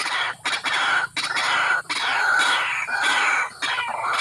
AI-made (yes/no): no